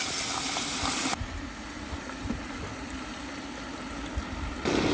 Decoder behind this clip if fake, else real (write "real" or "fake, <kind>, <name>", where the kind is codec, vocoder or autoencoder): real